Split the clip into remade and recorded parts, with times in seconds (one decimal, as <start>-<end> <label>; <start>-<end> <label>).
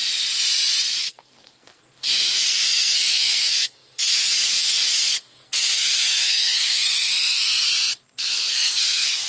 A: 0.0-1.0 recorded; 1.0-7.7 remade; 7.7-8.2 recorded; 8.2-9.3 remade